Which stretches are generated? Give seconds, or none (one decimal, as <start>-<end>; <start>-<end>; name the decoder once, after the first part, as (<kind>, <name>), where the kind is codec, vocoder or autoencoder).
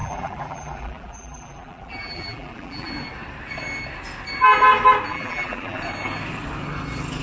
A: 0.0-2.9 (vocoder, BigVGAN v2); 5.1-5.8